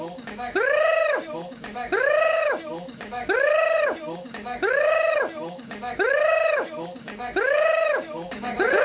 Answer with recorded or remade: remade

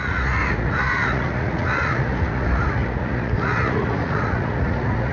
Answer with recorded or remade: remade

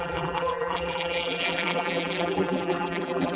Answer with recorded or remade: remade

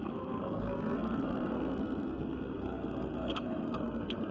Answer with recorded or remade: remade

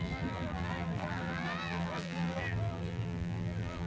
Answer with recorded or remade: remade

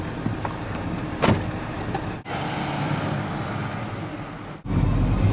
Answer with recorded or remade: recorded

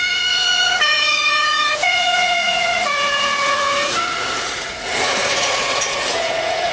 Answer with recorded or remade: remade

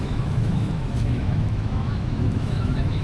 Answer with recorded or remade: remade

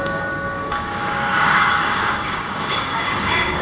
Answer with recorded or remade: remade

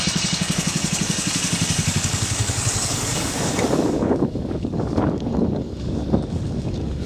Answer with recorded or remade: remade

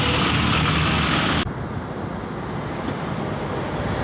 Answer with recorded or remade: recorded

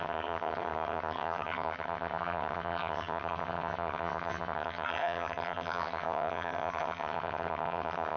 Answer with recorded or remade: remade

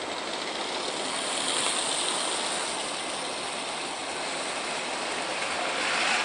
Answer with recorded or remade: recorded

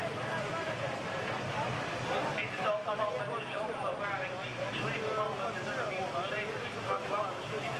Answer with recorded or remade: recorded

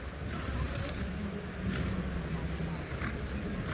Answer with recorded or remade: recorded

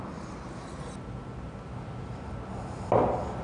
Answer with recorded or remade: recorded